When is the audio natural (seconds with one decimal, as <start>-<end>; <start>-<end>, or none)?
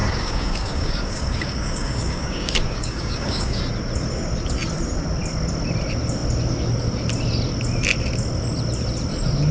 3.6-9.5